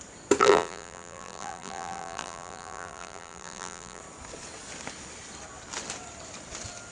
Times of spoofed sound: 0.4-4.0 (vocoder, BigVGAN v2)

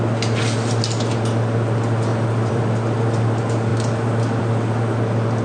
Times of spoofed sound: 2.1-2.6 (vocoder, BigVGAN v2)

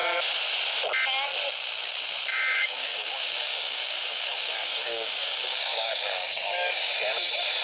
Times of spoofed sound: 2.3-6.9 (codec, DAC)

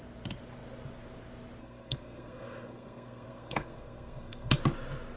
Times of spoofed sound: 1.6-4.6 (codec, SNAC)

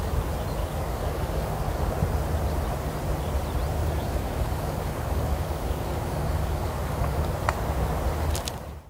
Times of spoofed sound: 0.6-1.9 (codec, DAC); 3.8-7.3

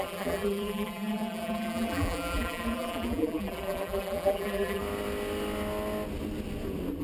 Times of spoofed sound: 0.0-4.8 (vocoder, BigVGAN v2)

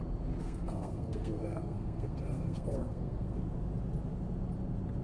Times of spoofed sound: 0.4-3.4 (codec, SNAC)